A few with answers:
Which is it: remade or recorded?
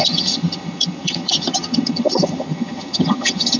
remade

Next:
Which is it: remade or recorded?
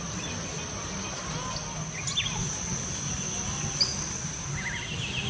recorded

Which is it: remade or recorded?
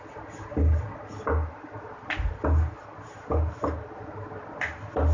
recorded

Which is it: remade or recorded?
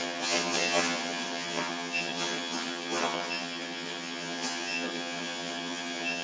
remade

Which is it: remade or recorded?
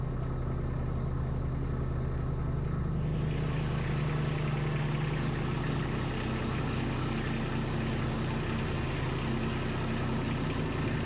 recorded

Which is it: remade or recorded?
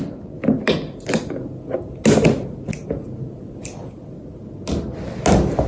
recorded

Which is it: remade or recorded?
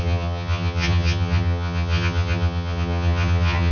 remade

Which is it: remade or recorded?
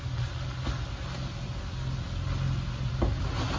recorded